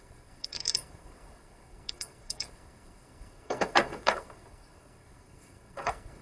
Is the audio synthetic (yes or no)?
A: yes